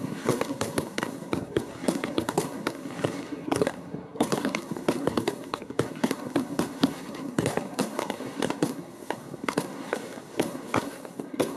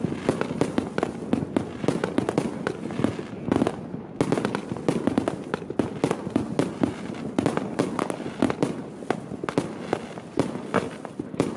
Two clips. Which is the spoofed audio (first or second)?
first